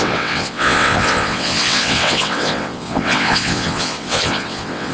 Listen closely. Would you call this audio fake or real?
fake